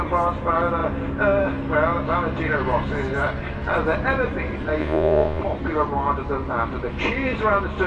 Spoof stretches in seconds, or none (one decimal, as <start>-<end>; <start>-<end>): 4.8-5.4